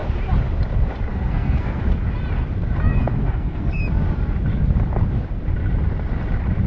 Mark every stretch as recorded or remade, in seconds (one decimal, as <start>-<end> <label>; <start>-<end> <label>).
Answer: 0.0-1.1 recorded; 1.1-1.8 remade; 1.8-2.9 recorded; 2.9-3.8 remade; 3.8-6.7 recorded